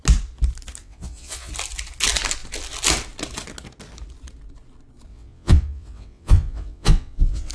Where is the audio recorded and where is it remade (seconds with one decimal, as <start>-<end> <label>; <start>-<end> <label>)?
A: 0.0-0.8 recorded; 0.8-1.5 remade; 1.5-5.1 recorded; 5.1-7.5 remade

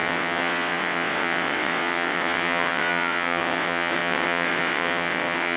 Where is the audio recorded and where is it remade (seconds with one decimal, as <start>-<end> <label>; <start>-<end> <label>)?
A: 0.0-5.6 remade

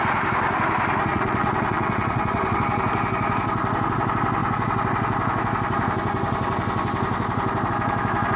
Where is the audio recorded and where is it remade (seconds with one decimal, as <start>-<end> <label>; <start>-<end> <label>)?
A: 0.0-1.1 recorded; 1.1-2.6 remade; 2.6-8.4 recorded

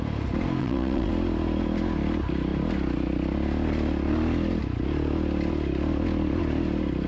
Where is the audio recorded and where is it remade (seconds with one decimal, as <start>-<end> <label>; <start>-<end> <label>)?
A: 0.0-0.6 recorded; 0.6-1.1 remade; 1.1-7.1 recorded

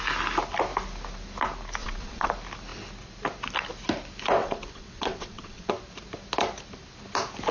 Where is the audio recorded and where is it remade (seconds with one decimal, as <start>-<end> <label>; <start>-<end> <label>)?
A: 0.0-1.8 recorded; 1.8-2.3 remade; 2.3-4.4 recorded; 4.4-5.7 remade; 5.7-7.5 recorded

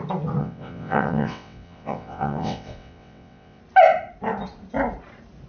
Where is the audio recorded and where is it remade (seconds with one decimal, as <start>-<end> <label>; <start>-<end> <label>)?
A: 0.0-0.4 recorded; 0.4-3.6 remade; 3.6-5.5 recorded

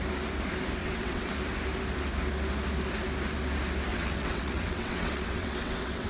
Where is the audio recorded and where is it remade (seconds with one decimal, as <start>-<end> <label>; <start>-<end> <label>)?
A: 0.0-0.8 recorded; 0.8-1.3 remade; 1.3-3.9 recorded; 3.9-6.1 remade